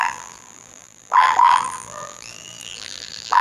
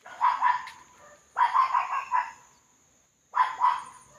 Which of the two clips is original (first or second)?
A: second